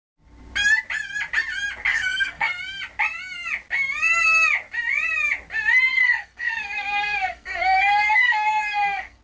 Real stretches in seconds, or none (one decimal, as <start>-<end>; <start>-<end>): 0.0-1.9; 2.6-5.9